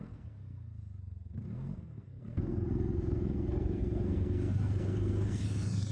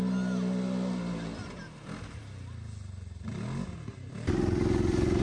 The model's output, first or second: first